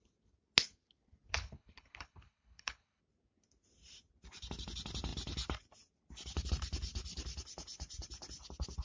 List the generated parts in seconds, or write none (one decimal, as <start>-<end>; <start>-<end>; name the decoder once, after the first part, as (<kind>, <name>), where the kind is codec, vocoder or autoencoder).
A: 1.3-3.0 (codec, HILCodec)